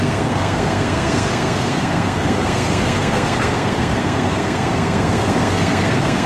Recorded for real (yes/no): no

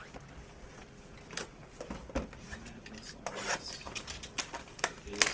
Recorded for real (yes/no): yes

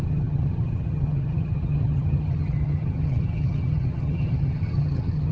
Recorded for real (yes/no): no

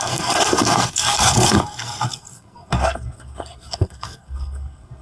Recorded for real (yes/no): no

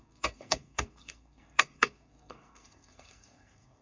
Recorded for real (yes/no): no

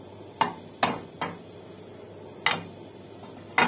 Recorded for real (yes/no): yes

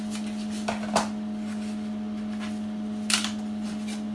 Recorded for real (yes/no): yes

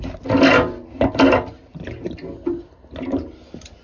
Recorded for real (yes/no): yes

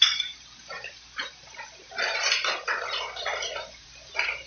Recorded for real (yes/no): no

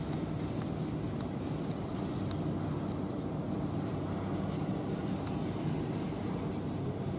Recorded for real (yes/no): yes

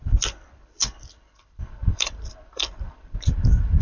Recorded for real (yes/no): no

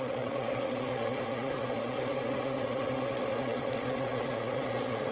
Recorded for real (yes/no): no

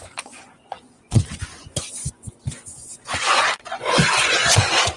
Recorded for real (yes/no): no